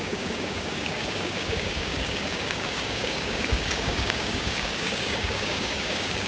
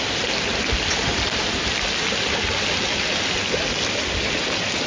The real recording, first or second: second